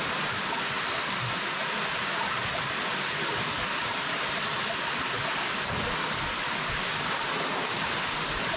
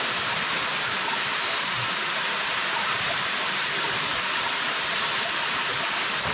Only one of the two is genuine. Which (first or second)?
first